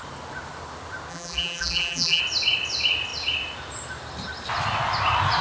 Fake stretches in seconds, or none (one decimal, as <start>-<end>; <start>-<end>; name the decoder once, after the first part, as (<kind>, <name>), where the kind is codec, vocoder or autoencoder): 1.1-2.2 (vocoder, BigVGAN v2)